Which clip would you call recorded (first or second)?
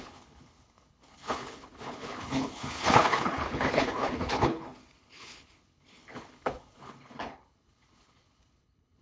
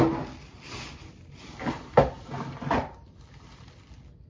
second